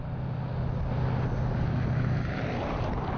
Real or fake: real